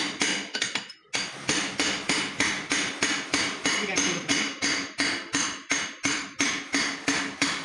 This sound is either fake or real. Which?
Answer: real